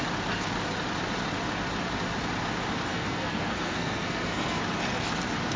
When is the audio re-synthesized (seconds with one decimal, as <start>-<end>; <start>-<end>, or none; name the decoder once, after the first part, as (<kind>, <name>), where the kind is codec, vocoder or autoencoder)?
2.9-4.6 (codec, SNAC)